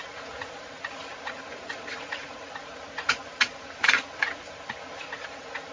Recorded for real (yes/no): no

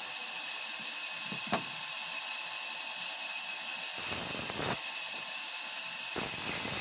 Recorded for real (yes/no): yes